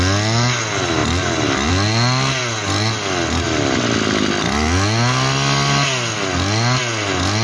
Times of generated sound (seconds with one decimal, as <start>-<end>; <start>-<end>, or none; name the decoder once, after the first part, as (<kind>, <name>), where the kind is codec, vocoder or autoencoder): none